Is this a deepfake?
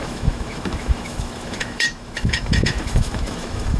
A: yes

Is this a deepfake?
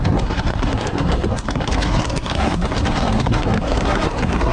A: yes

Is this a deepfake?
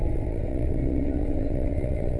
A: yes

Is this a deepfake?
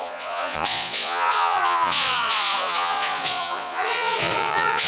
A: yes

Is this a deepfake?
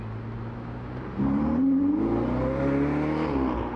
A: no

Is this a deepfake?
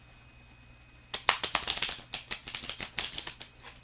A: no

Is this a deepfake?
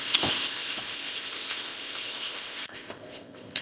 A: yes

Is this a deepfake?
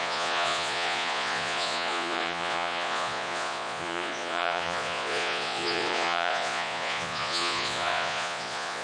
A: yes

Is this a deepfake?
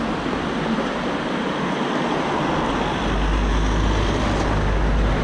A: no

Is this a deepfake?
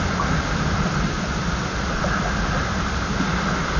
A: no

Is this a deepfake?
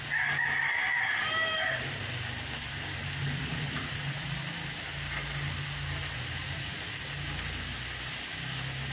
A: no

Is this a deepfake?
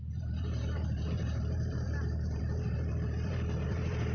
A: yes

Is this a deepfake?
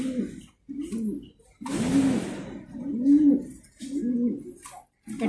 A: no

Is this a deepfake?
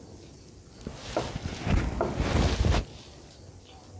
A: no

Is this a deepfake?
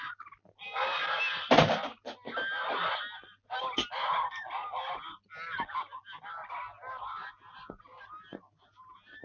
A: no